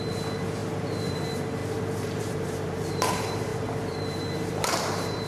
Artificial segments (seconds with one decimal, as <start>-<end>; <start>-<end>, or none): 0.0-1.6; 2.2-5.3